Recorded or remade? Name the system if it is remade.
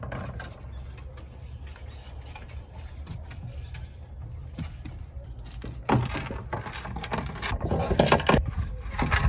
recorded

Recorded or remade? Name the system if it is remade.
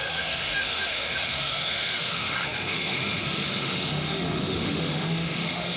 remade, autoencoder, DAC-VAE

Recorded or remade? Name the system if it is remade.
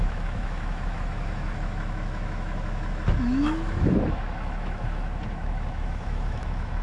remade, autoencoder, DAC-VAE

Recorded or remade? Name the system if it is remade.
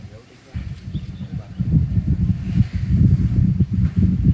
recorded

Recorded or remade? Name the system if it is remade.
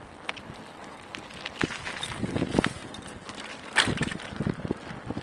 recorded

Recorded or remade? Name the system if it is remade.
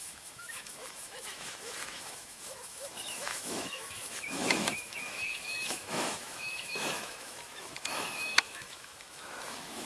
remade, autoencoder, DAC-VAE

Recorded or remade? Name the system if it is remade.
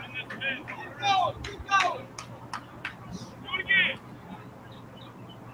recorded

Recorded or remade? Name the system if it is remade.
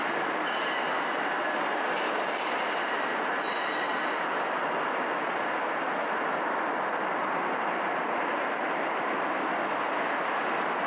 recorded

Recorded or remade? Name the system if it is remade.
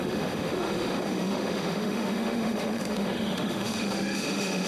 remade, autoencoder, DAC-VAE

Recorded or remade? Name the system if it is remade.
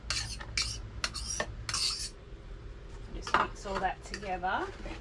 recorded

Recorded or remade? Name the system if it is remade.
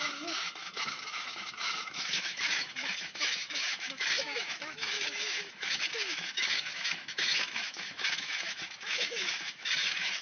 remade, autoencoder, DAC-VAE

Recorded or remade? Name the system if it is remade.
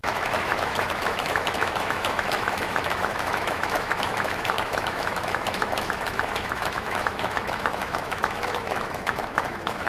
remade, autoencoder, DAC-VAE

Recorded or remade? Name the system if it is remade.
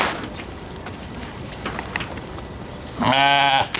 recorded